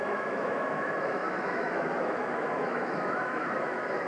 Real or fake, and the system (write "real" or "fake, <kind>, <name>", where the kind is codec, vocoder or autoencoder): fake, autoencoder, DAC-VAE